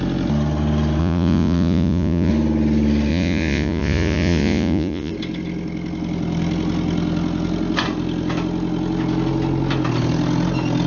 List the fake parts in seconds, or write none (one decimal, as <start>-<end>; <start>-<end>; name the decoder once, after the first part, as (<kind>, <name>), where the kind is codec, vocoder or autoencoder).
1.0-2.3 (vocoder, Vocos); 3.1-5.1